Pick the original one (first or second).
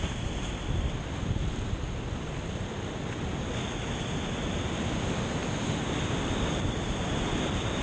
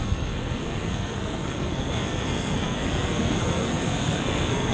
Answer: first